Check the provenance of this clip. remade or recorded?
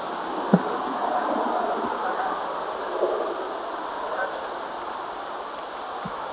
recorded